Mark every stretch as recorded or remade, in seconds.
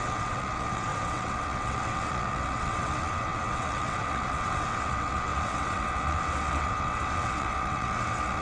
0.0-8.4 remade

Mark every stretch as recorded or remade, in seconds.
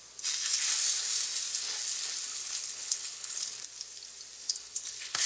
0.0-2.3 recorded; 2.3-3.5 remade; 3.5-4.4 recorded; 4.4-5.3 remade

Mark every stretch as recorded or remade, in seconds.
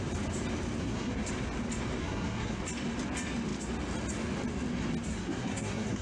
0.0-0.8 recorded; 0.8-1.3 remade; 1.3-2.0 recorded; 2.0-2.6 remade; 2.6-5.1 recorded; 5.1-6.0 remade